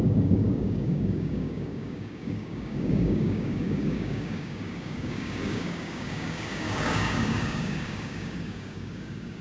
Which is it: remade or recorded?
remade